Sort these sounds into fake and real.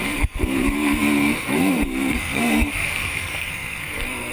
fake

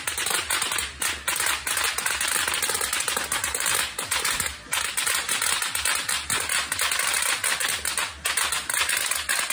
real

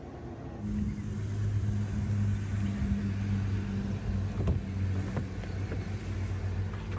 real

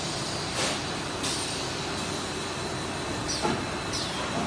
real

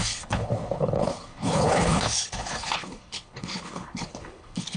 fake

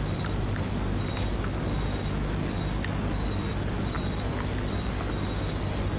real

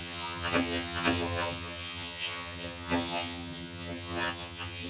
fake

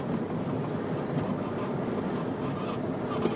real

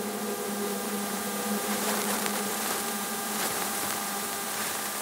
fake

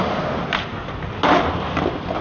real